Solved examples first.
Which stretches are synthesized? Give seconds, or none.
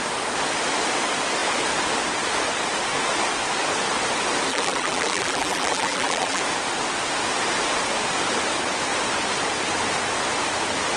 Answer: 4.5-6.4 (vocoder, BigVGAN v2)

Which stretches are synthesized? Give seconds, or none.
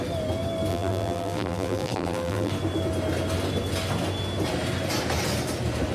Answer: 0.7-2.5 (vocoder, BigVGAN v2)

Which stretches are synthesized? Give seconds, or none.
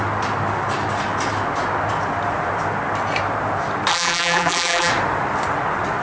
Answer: 3.9-4.9 (vocoder, BigVGAN v2)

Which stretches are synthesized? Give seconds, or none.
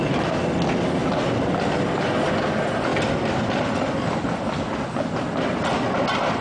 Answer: 1.0-2.3 (vocoder, BigVGAN v2); 2.9-5.2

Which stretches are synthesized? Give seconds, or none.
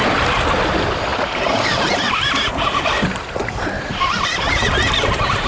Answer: none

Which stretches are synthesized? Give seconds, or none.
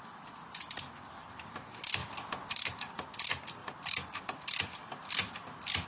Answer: 2.0-2.5 (vocoder, BigVGAN v2); 3.6-5.9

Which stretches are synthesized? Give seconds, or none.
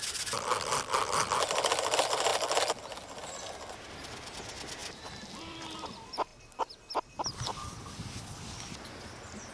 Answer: 0.0-2.3 (vocoder, BigVGAN v2); 3.9-6.3; 7.0-9.5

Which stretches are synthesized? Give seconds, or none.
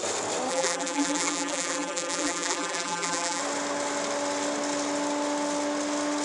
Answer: 0.5-3.4 (vocoder, BigVGAN v2)